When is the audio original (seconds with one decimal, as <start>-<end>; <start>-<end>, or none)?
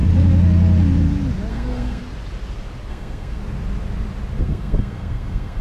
0.0-1.5; 2.0-2.9; 3.4-4.4